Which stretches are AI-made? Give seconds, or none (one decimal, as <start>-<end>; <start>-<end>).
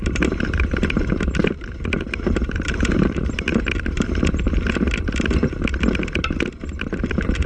0.0-3.5; 7.1-7.5